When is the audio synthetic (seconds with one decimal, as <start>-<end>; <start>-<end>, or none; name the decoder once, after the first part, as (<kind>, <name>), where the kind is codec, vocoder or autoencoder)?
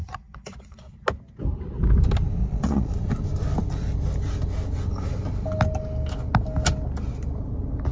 0.0-0.9 (vocoder, Vocos); 2.4-2.9